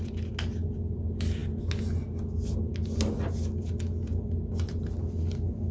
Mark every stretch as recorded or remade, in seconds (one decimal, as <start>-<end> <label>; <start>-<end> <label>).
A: 0.0-5.7 recorded